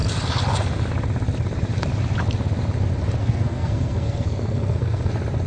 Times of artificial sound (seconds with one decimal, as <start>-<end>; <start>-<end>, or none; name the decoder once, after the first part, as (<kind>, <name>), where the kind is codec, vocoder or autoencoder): 3.2-5.1 (codec, SNAC)